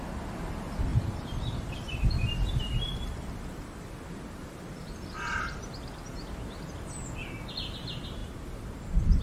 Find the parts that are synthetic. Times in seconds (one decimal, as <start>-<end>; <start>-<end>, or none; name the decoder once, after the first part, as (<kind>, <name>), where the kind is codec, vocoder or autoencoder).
0.9-5.1 (vocoder, BigVGAN v2); 8.2-9.2